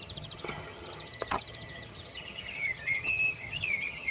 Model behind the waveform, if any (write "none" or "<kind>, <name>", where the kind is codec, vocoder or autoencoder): vocoder, HiFi-GAN